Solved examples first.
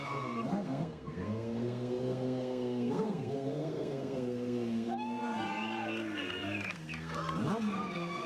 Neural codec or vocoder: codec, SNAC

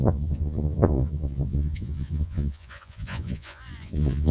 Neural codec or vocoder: vocoder, Vocos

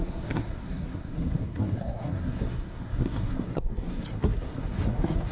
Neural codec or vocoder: codec, SNAC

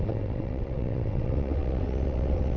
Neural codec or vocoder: vocoder, WaveNeXt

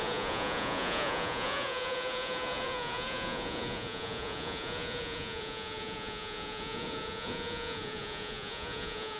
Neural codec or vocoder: vocoder, Vocos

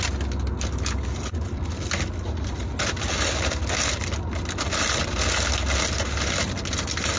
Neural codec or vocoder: none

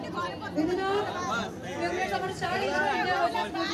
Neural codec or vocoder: none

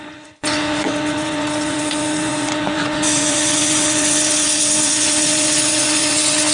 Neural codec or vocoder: vocoder, Vocos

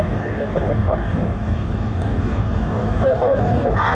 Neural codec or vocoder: codec, DAC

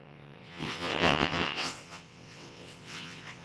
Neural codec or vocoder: vocoder, WaveNeXt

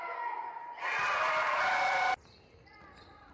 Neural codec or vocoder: vocoder, BigVGAN v2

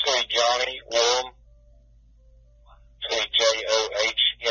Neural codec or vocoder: none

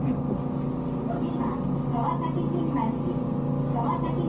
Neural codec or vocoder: none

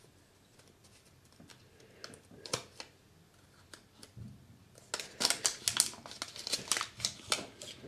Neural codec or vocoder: none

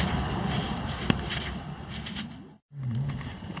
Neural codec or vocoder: none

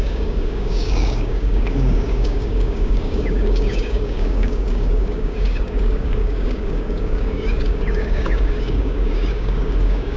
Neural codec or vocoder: codec, DAC